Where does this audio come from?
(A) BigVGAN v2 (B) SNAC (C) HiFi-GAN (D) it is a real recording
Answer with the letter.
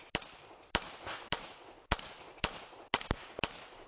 D